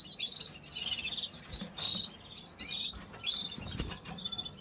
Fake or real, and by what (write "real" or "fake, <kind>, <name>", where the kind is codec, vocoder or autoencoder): real